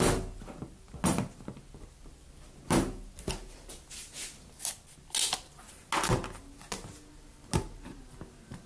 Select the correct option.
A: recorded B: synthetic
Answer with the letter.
A